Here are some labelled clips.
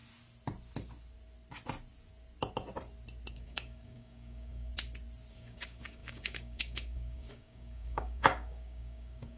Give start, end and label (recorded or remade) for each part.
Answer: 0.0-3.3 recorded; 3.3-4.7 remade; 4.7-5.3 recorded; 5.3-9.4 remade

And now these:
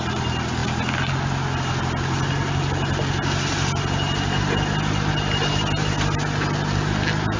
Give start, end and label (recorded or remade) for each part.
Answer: 0.0-7.4 recorded

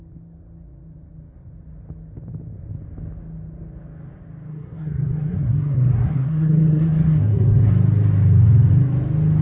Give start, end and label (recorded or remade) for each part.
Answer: 0.0-4.5 recorded; 4.5-7.7 remade; 7.7-9.4 recorded

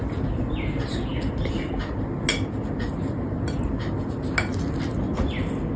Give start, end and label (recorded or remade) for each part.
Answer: 0.0-5.8 recorded